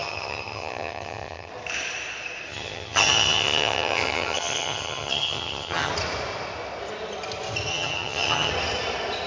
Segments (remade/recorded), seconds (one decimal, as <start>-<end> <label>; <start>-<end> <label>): 0.0-1.5 remade; 1.5-2.5 recorded; 2.5-5.9 remade; 5.9-7.7 recorded; 7.7-8.5 remade; 8.5-9.3 recorded